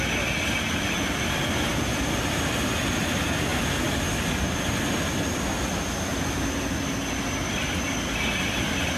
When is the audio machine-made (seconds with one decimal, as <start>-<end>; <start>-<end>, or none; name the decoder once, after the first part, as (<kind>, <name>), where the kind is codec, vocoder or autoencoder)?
none